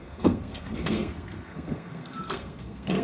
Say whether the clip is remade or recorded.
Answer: remade